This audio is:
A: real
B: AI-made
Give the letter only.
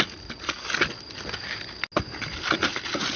A